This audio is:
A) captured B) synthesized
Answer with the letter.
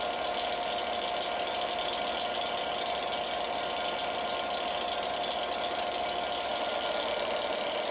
A